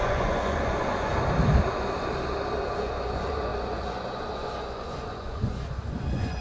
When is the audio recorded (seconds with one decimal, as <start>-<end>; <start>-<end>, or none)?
1.1-2.6